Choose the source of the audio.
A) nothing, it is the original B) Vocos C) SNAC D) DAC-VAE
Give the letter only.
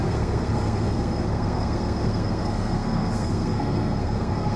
C